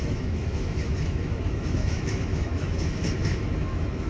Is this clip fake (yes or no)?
yes